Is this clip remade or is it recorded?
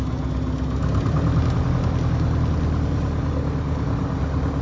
recorded